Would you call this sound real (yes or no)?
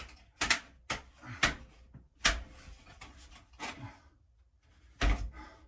yes